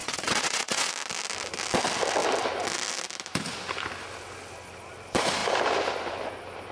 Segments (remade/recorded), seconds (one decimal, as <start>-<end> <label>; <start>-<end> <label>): 0.0-0.9 remade; 0.9-6.7 recorded

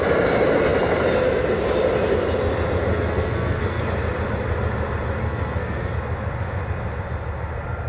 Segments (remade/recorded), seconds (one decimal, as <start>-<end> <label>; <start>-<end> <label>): 0.0-2.9 recorded; 2.9-3.8 remade; 3.8-5.2 recorded; 5.2-5.9 remade; 5.9-7.9 recorded

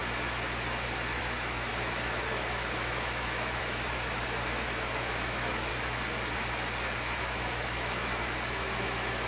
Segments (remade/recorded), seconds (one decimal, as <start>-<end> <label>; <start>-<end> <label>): 0.0-1.2 recorded; 1.2-5.7 remade; 5.7-7.2 recorded; 7.2-9.3 remade

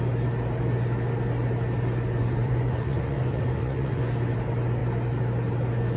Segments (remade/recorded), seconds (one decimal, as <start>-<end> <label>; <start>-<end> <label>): 0.0-2.2 recorded; 2.2-4.0 remade; 4.0-6.0 recorded

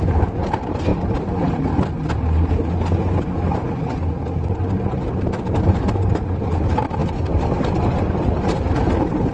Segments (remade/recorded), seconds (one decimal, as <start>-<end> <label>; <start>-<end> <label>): 0.0-0.9 recorded; 0.9-1.9 remade; 1.9-9.3 recorded

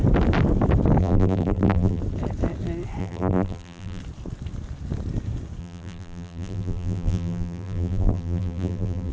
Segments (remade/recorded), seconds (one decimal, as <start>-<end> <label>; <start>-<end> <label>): 0.0-1.0 recorded; 1.0-2.0 remade; 2.0-3.0 recorded; 3.0-4.0 remade; 4.0-5.6 recorded; 5.6-9.1 remade

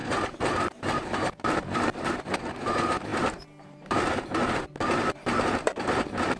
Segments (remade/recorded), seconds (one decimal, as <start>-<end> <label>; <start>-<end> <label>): 0.0-6.4 remade

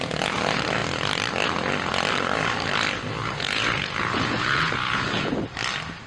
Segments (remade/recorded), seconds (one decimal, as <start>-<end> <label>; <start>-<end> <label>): 0.0-3.2 recorded; 3.2-5.3 remade; 5.3-6.1 recorded